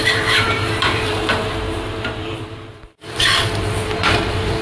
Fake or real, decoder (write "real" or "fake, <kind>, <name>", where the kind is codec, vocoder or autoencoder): fake, vocoder, BigVGAN v2